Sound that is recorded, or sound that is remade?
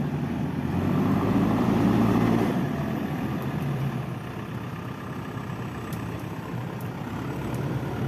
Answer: remade